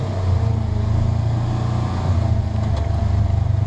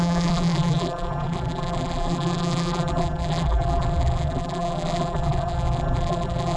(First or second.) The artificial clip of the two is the second